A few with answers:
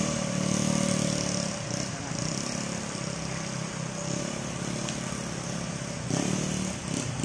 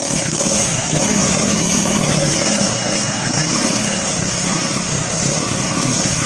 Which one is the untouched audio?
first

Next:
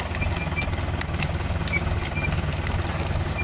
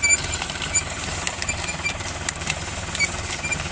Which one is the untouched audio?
first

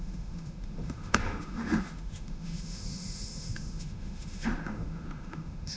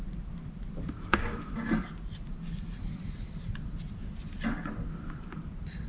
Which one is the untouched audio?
second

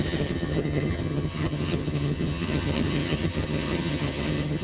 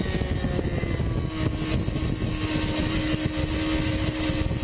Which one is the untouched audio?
second